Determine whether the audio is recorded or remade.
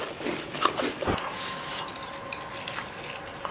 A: recorded